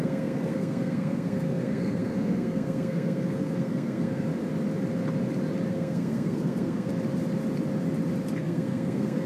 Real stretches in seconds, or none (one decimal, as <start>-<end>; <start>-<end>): 4.3-5.7; 6.9-8.4